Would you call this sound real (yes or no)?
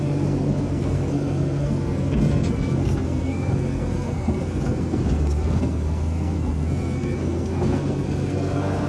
no